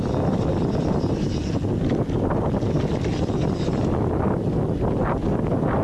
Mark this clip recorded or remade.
recorded